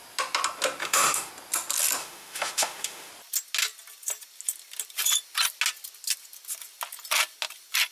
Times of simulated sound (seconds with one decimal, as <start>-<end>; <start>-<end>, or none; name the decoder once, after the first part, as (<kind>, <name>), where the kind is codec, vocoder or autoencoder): 0.8-1.3 (autoencoder, DAC-VAE); 2.0-3.1